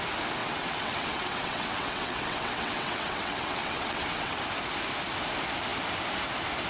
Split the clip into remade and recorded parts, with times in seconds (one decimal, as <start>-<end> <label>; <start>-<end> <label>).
0.0-0.4 recorded; 0.4-4.4 remade; 4.4-6.7 recorded